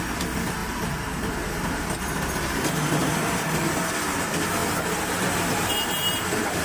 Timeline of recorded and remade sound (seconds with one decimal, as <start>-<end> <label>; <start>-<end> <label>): 0.0-0.6 recorded; 0.6-1.8 remade; 1.8-3.0 recorded; 3.0-3.8 remade; 3.8-4.6 recorded; 4.6-6.6 remade